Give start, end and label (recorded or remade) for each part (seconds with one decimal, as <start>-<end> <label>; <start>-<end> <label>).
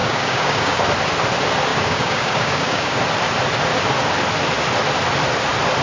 0.0-0.8 remade; 0.8-1.7 recorded; 1.7-3.0 remade; 3.0-5.8 recorded